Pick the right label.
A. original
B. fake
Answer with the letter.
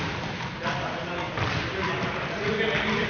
A